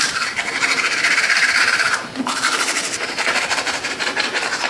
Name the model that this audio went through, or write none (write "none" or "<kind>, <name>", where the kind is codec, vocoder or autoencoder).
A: vocoder, BigVGAN v2